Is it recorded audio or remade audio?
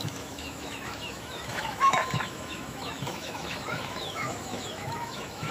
remade